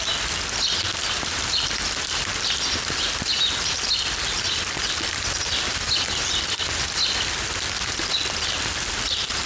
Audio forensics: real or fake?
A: real